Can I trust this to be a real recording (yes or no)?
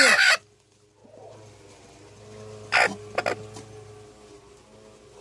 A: yes